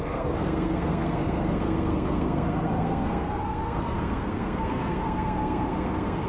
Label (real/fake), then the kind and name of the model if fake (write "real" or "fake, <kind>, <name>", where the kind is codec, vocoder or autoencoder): fake, codec, SNAC